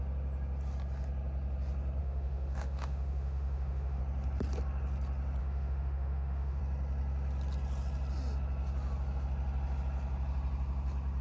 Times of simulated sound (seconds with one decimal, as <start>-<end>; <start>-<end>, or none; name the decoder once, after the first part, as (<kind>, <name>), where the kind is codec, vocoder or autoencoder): 2.0-4.0 (autoencoder, DAC-VAE); 5.4-6.6